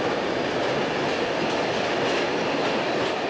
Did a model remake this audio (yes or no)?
no